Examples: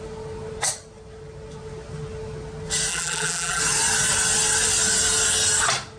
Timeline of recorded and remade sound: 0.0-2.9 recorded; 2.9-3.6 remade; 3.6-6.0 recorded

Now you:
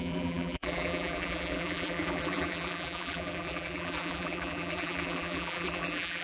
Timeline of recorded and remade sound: 0.0-6.2 remade

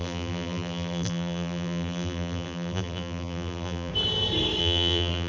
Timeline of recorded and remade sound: 0.0-3.9 remade; 3.9-4.6 recorded; 4.6-5.3 remade

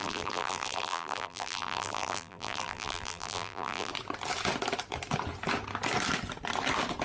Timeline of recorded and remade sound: 0.0-3.9 remade; 3.9-7.0 recorded

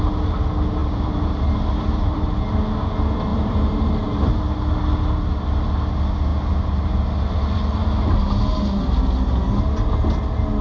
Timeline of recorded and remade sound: 0.0-0.8 recorded; 0.8-2.3 remade; 2.3-3.3 recorded; 3.3-4.3 remade; 4.3-10.6 recorded